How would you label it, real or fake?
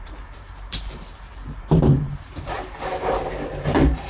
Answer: fake